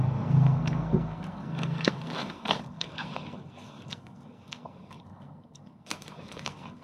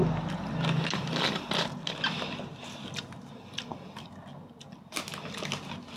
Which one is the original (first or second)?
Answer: second